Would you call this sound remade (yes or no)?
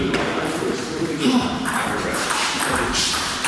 yes